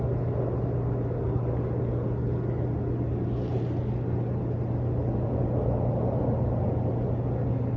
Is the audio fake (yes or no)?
no